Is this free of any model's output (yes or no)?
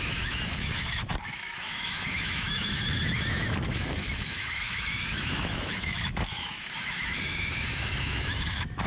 no